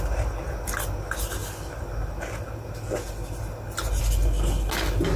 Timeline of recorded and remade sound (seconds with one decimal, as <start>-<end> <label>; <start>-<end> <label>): 0.0-5.2 recorded